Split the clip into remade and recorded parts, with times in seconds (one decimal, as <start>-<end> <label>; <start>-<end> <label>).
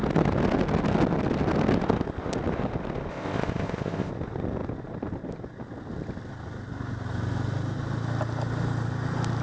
0.0-3.1 recorded; 3.1-4.1 remade; 4.1-9.4 recorded